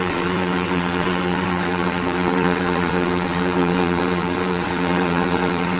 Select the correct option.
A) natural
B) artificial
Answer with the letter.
B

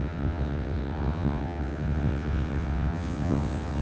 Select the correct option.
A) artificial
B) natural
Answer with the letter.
A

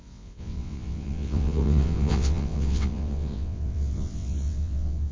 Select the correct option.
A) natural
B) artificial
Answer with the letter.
B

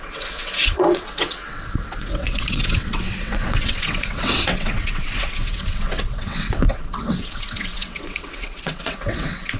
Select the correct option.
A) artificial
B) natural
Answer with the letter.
A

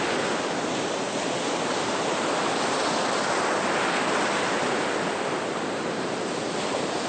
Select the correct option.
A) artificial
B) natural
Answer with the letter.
B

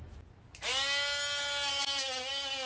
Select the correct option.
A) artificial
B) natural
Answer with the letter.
B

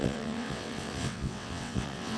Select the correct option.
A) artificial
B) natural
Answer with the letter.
A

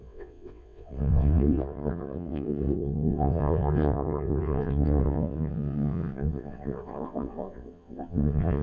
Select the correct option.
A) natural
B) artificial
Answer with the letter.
B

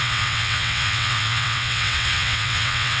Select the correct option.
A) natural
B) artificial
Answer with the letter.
B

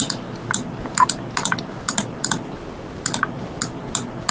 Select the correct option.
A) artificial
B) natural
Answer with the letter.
B